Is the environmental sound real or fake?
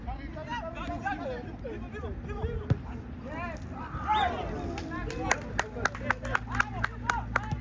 real